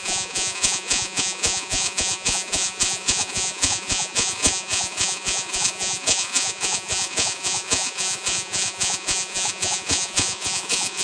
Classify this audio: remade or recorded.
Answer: remade